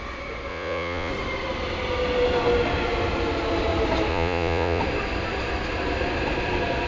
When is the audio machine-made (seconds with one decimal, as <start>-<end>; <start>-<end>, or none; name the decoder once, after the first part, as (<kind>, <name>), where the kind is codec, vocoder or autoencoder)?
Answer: 0.5-1.1 (vocoder, Vocos); 4.1-4.8